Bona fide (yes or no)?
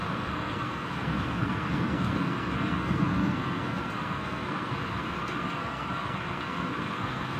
no